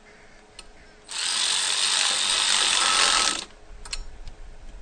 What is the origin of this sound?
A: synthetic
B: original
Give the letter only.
B